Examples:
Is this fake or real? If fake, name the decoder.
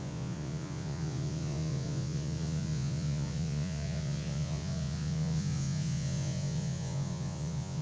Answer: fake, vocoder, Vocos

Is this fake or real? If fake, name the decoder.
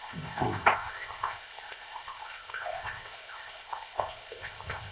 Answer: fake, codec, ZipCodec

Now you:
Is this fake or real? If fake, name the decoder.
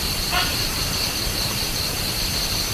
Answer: fake, vocoder, BigVGAN v2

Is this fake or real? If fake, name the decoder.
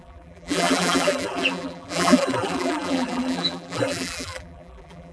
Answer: fake, vocoder, BigVGAN v2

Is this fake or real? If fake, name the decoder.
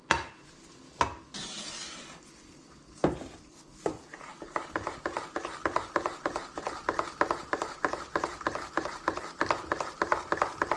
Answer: real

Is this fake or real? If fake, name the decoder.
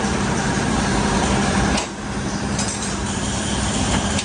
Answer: fake, vocoder, BigVGAN v2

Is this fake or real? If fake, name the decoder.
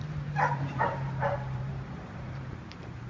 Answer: fake, vocoder, BigVGAN v2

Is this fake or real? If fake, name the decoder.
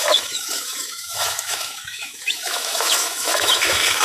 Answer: fake, autoencoder, DAC-VAE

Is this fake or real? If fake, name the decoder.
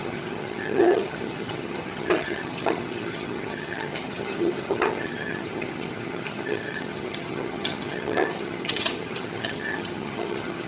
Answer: fake, vocoder, HiFi-GAN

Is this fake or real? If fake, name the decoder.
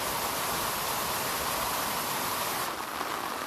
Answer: real